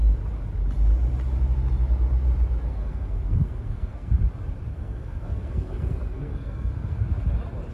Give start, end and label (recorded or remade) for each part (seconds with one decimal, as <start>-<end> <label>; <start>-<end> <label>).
0.0-2.7 recorded; 2.7-4.2 remade; 4.2-4.7 recorded; 4.7-7.0 remade; 7.0-7.7 recorded